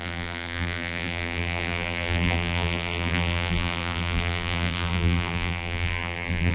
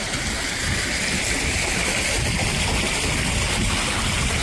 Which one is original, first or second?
second